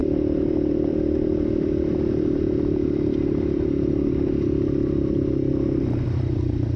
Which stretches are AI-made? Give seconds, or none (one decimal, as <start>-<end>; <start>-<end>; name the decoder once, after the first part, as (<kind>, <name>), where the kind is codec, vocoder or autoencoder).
0.0-4.1 (vocoder, BigVGAN v2)